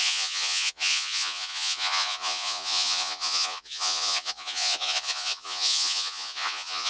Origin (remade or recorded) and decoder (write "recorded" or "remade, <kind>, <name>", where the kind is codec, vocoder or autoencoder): remade, vocoder, Vocos